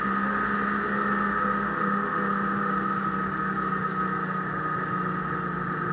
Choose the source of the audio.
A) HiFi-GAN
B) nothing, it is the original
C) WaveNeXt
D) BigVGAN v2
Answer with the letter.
B